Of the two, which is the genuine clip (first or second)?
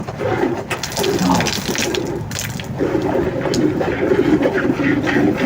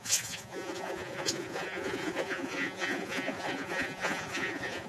first